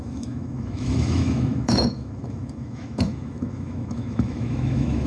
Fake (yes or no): yes